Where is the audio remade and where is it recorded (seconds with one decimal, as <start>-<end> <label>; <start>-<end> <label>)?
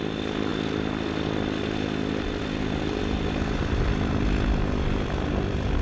0.0-5.8 recorded